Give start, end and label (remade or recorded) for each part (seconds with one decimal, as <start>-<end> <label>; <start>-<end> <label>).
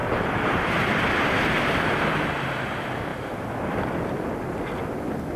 0.0-0.7 remade; 0.7-5.4 recorded